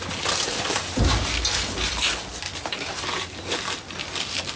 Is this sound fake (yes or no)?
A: no